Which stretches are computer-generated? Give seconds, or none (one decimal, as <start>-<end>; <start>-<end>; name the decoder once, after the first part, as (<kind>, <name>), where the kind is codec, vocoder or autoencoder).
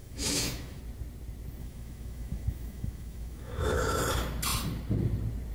0.0-0.8 (autoencoder, DAC-VAE); 1.6-4.0